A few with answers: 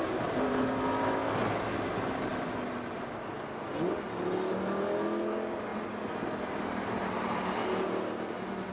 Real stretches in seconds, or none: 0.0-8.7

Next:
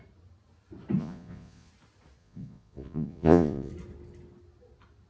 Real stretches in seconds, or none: 0.0-1.0; 1.7-2.2; 3.7-5.1